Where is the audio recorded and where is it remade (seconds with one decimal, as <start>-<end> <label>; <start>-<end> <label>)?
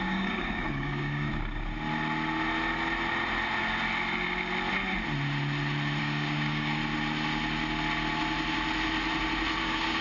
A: 0.0-1.3 remade; 1.3-6.0 recorded; 6.0-6.8 remade; 6.8-9.6 recorded; 9.6-10.0 remade